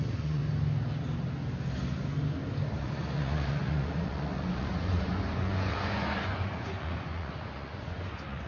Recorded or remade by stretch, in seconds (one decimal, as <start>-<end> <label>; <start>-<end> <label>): 0.0-0.4 remade; 0.4-2.8 recorded; 2.8-8.5 remade